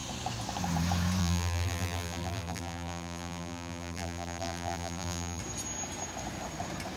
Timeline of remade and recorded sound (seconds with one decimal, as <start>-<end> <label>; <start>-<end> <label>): 0.0-1.2 recorded; 1.2-5.4 remade; 5.4-7.0 recorded